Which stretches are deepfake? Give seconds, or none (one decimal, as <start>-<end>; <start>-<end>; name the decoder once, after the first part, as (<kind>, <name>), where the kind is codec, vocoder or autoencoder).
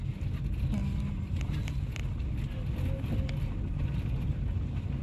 none